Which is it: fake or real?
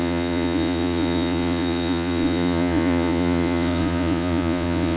fake